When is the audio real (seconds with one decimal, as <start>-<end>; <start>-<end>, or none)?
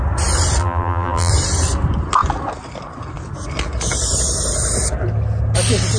0.0-0.6; 1.3-6.0